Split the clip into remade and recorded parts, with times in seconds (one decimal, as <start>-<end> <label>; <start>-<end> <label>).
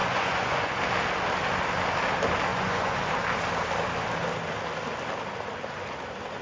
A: 0.0-0.8 remade; 0.8-2.5 recorded; 2.5-3.1 remade; 3.1-6.4 recorded